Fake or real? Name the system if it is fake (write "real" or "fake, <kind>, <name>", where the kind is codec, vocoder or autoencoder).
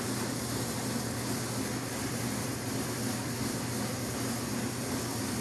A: real